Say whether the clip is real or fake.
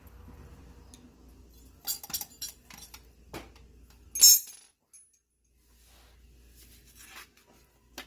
real